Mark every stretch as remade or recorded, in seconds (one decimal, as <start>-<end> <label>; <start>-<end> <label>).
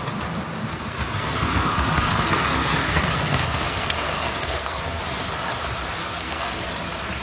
0.0-0.7 recorded; 0.7-5.0 remade; 5.0-6.0 recorded; 6.0-6.7 remade; 6.7-7.2 recorded